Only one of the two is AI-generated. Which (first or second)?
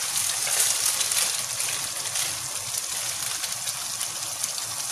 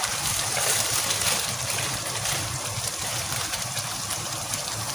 second